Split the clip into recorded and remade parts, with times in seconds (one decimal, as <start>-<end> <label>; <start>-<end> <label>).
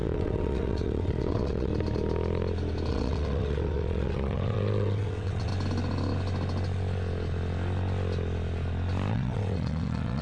0.0-1.7 remade; 1.7-2.9 recorded; 2.9-5.5 remade; 5.5-9.1 recorded; 9.1-10.2 remade